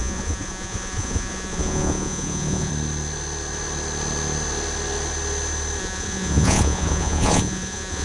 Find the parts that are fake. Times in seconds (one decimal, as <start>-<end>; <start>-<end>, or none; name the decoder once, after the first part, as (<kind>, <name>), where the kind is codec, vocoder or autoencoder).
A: 0.0-2.7 (vocoder, Vocos); 5.8-8.0